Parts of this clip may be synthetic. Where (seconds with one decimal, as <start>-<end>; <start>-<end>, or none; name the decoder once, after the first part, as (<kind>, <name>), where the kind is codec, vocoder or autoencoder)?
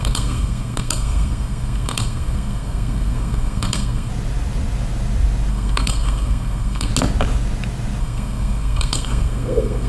0.0-4.1 (codec, SNAC); 5.5-6.9; 8.0-9.9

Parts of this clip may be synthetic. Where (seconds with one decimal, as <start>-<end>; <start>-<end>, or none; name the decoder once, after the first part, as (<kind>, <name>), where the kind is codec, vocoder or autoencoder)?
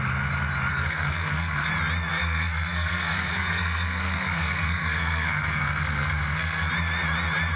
0.7-1.7 (codec, SNAC); 2.1-6.7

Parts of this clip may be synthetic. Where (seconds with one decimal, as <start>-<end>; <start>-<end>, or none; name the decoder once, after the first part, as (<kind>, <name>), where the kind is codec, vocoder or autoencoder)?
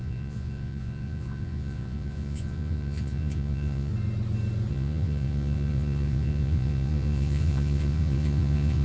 0.0-3.9 (vocoder, Vocos); 4.7-8.8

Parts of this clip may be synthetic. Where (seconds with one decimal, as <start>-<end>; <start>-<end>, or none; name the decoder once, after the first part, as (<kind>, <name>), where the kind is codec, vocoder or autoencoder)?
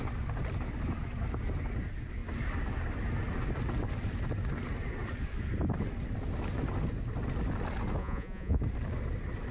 8.0-8.6 (vocoder, Vocos)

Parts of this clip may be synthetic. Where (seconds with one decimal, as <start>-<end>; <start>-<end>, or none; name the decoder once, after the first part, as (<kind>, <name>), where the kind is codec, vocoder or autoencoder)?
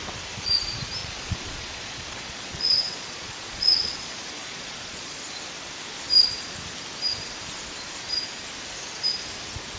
1.0-5.2 (vocoder, Vocos)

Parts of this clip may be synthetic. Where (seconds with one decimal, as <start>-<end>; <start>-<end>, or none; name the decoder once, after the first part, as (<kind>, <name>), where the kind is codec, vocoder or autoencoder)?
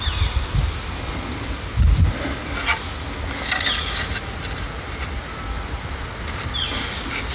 none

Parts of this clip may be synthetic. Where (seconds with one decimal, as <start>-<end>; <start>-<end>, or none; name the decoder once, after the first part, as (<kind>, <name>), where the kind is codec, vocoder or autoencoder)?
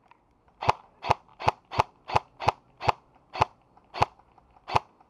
none